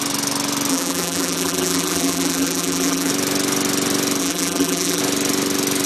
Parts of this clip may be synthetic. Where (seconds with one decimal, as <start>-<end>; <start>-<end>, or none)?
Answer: 0.7-3.1; 4.2-5.0